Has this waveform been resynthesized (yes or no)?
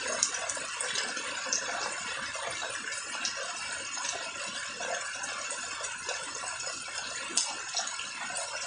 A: no